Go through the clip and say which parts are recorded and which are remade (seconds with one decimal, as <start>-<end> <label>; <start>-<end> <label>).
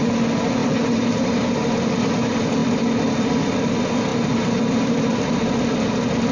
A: 0.0-0.6 recorded; 0.6-1.4 remade; 1.4-4.1 recorded; 4.1-5.2 remade; 5.2-6.3 recorded